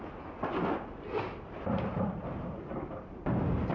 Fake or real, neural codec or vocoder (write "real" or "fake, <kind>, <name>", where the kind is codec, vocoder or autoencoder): real